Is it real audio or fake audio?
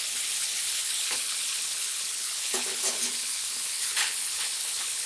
fake